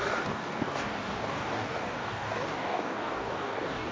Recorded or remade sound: remade